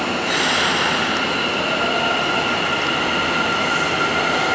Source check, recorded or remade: recorded